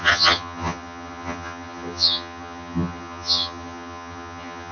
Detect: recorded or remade remade